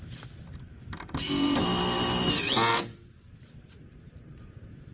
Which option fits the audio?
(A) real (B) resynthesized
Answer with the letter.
A